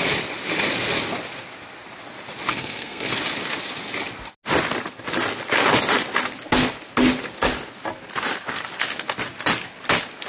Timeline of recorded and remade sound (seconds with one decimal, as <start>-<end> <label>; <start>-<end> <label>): 0.0-2.5 recorded; 2.5-3.1 remade; 3.1-10.3 recorded